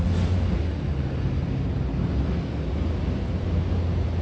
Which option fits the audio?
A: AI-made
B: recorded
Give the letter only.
B